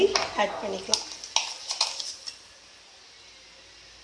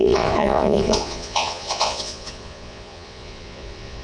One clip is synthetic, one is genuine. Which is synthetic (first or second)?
second